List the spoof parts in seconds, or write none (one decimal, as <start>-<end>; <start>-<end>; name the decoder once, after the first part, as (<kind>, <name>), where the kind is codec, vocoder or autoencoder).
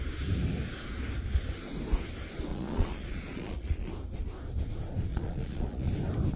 2.5-3.9 (vocoder, Vocos); 5.1-5.9